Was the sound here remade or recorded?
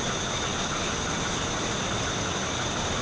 recorded